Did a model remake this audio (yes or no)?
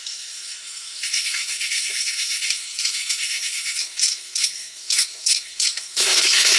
yes